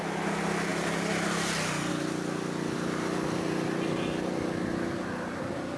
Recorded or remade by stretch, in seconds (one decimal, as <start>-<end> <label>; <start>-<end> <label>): 0.0-5.8 recorded